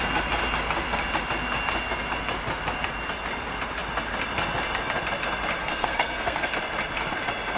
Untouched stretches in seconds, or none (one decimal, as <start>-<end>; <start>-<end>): 0.0-5.6; 6.5-7.6